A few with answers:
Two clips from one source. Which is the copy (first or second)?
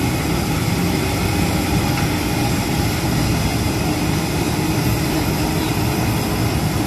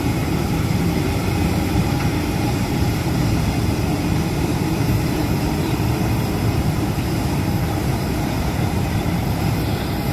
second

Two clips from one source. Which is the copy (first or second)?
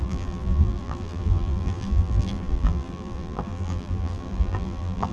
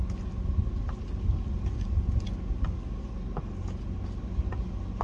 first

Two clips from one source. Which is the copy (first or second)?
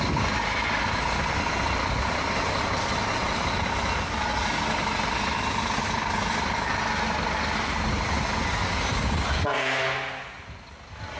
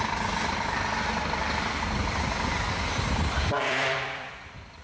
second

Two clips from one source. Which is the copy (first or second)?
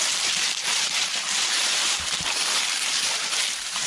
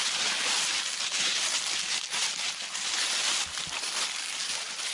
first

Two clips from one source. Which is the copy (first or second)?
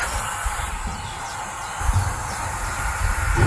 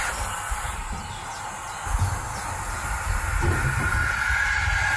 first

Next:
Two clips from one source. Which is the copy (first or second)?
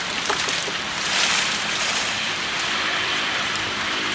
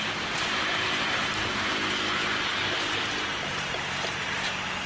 first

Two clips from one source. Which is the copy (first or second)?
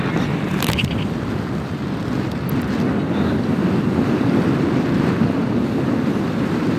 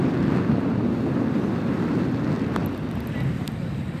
first